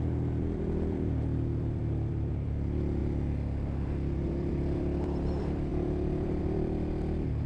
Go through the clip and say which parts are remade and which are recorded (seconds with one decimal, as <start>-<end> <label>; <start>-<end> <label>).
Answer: 0.0-3.0 remade; 3.0-4.3 recorded; 4.3-7.5 remade